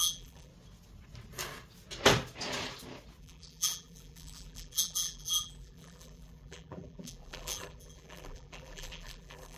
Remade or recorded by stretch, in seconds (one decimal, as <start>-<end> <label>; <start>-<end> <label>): 0.0-0.5 remade; 0.5-3.2 recorded; 3.2-9.6 remade